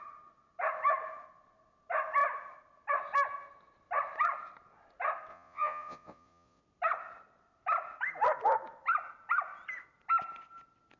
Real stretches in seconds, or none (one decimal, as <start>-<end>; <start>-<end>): 0.0-5.3; 6.6-11.0